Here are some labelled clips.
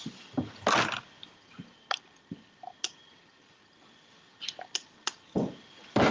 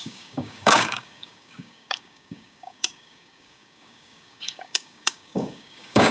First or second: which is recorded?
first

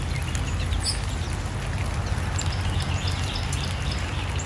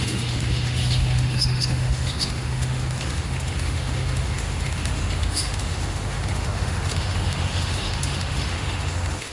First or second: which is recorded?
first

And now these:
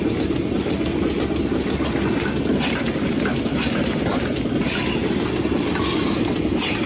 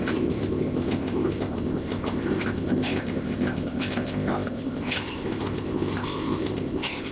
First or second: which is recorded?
first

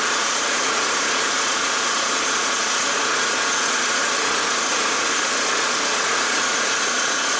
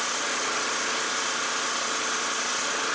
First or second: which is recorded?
second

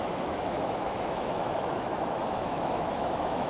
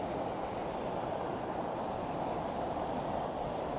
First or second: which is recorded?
second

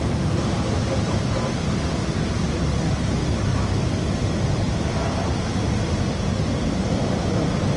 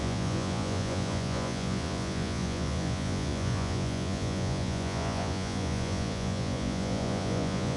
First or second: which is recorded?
first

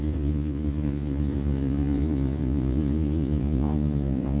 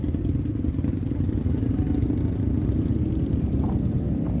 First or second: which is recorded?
second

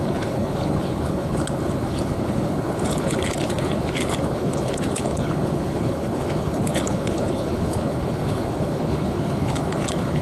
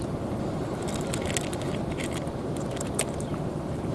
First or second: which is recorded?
second